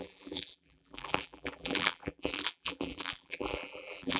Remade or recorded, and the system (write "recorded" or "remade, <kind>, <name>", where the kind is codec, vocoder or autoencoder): remade, vocoder, BigVGAN v2